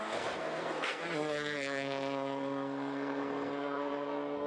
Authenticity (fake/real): fake